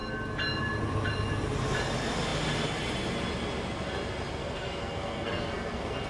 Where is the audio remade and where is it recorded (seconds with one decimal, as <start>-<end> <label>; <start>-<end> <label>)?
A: 0.0-4.4 recorded; 4.4-6.1 remade